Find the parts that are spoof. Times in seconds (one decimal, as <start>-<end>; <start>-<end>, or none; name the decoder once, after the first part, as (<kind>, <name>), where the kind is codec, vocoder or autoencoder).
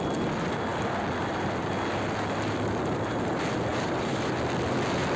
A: 3.7-4.4 (vocoder, BigVGAN v2)